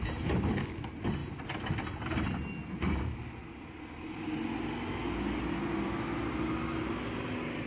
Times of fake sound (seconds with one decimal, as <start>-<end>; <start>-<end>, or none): none